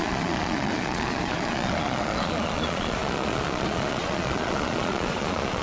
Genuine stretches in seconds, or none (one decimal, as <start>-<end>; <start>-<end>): none